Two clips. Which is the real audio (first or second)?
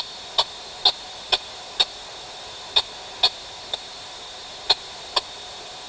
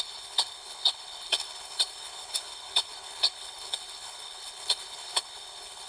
first